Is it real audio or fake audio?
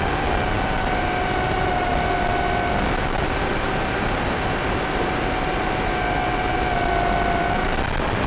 real